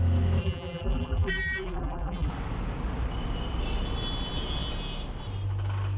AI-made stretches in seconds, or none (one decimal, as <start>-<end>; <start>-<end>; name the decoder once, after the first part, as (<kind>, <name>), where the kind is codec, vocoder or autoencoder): 0.4-2.3 (vocoder, BigVGAN v2)